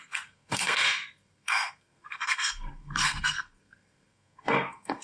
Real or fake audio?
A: fake